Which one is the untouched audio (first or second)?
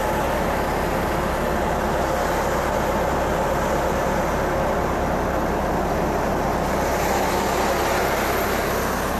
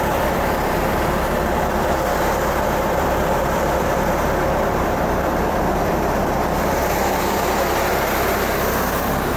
first